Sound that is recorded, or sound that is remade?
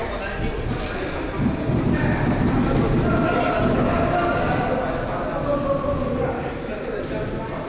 recorded